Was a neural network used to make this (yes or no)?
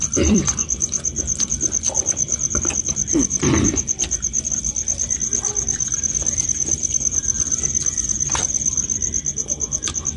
yes